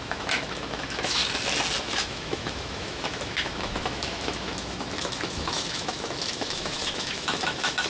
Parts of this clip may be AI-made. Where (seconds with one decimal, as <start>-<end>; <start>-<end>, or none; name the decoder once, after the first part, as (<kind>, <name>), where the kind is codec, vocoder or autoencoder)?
0.0-1.2 (autoencoder, DAC-VAE); 1.8-7.9